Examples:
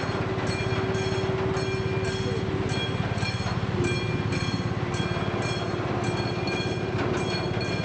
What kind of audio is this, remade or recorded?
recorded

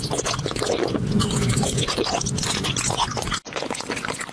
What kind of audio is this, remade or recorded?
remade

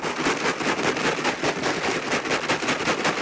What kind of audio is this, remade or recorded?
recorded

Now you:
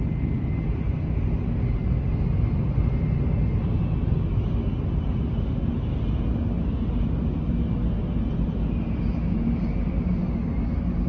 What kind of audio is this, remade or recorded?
recorded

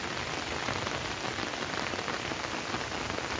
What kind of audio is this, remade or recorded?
recorded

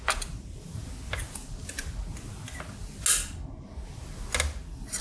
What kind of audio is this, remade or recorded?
recorded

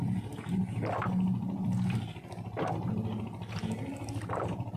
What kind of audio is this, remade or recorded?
recorded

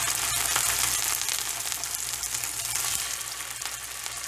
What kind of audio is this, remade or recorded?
recorded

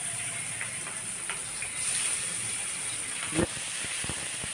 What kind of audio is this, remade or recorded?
remade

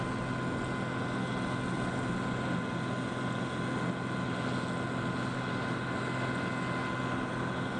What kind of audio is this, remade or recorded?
recorded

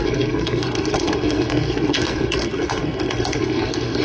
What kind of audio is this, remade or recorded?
remade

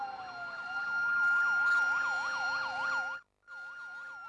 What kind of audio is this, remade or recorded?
recorded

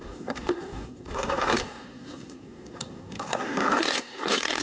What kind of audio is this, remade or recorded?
remade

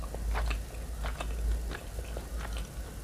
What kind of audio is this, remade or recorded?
recorded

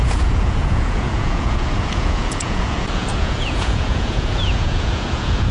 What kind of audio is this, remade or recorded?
remade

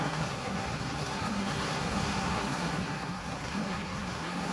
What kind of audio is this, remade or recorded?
remade